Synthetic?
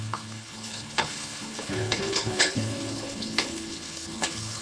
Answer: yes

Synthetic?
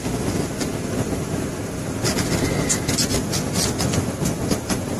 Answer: no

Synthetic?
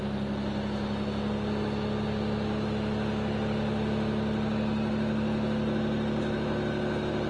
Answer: no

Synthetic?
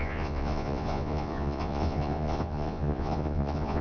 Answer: yes